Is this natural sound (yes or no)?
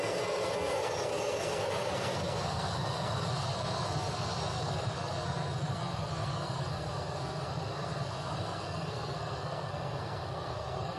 no